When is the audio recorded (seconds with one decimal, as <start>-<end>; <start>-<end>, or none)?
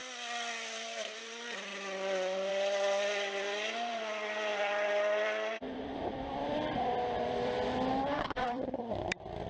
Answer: 0.0-1.2; 1.7-2.5